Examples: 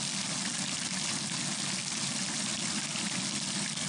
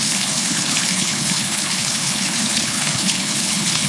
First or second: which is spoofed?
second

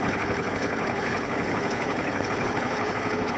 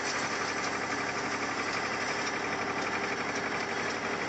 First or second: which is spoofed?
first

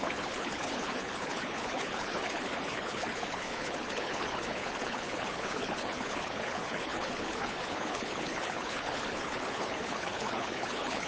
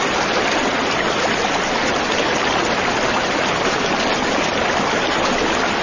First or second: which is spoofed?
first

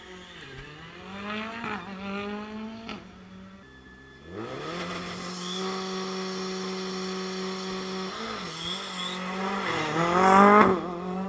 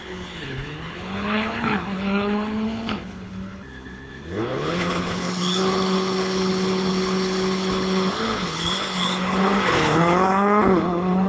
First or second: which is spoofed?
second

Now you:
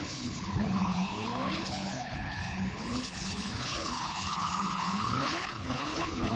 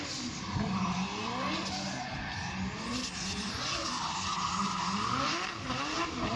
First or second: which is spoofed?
first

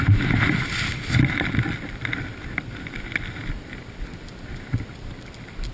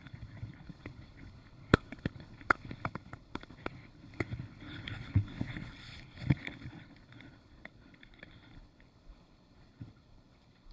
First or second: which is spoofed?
second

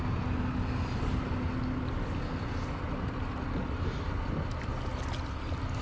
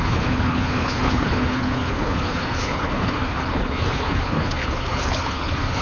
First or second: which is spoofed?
second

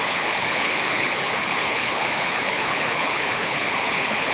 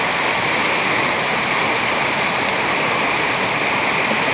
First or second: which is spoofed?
first